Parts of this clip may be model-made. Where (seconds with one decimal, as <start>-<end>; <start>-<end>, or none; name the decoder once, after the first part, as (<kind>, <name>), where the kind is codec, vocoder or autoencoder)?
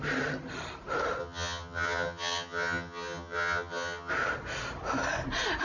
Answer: 1.2-4.1 (vocoder, HiFi-GAN)